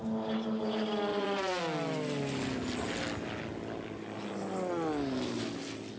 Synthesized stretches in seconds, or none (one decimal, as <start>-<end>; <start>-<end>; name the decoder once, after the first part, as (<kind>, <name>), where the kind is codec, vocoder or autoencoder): 1.1-1.6 (vocoder, Vocos)